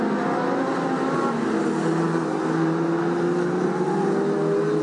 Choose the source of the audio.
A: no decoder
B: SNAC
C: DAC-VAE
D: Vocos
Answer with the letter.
A